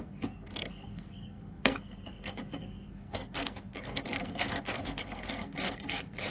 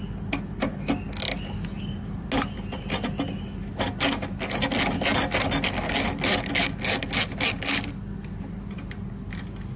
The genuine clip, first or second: second